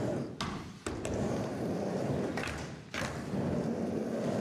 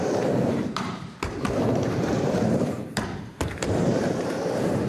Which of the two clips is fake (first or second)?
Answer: second